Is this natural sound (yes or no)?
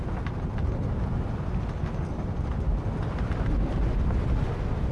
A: yes